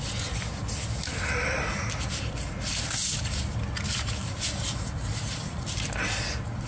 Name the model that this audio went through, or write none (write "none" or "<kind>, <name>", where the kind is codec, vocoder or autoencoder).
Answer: none